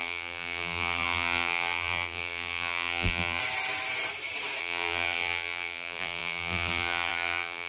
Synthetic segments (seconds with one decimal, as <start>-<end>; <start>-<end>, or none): 0.0-3.4; 4.6-7.7